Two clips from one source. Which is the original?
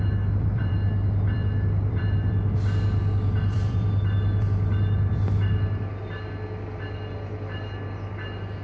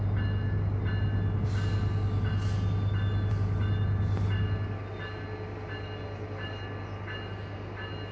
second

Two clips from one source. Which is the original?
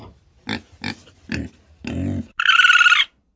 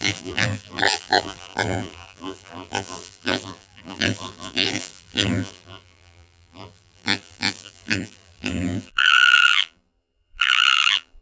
first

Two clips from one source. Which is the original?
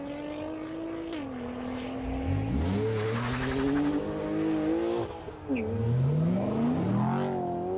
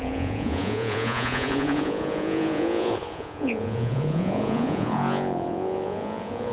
first